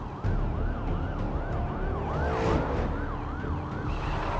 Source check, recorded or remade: recorded